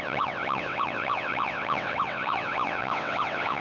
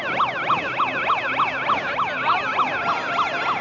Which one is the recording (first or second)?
second